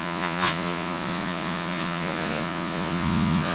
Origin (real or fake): fake